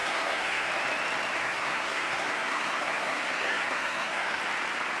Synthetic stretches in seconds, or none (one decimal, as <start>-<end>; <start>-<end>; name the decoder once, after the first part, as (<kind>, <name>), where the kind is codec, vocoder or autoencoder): 0.0-0.7 (codec, SNAC); 1.4-4.4